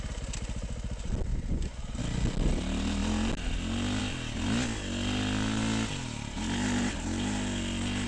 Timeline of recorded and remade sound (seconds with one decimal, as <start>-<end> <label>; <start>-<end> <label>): 0.0-1.3 recorded; 1.3-2.0 remade; 2.0-8.1 recorded